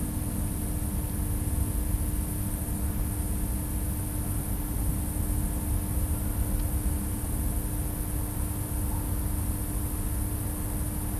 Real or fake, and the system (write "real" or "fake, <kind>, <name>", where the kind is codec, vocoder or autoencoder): real